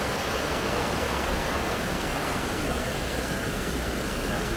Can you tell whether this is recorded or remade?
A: remade